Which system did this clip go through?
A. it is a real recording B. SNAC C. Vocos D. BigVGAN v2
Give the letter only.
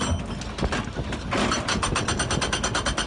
A